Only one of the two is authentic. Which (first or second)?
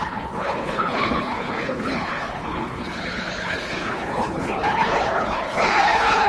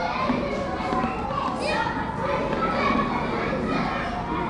second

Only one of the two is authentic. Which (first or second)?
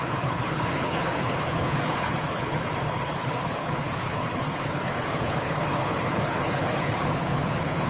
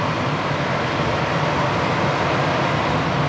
second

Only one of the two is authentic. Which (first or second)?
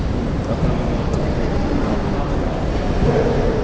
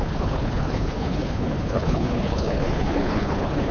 first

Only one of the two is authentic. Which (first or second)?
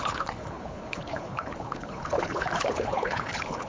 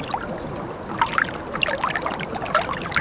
second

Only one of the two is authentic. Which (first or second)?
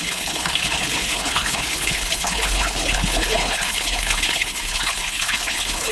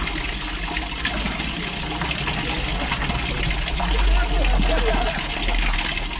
second